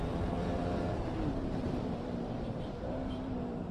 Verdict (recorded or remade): remade